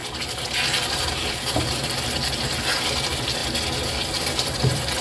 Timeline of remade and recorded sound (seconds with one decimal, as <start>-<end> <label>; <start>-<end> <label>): 0.0-5.0 recorded